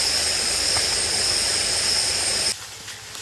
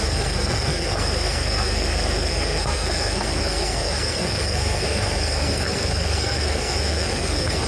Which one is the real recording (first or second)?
first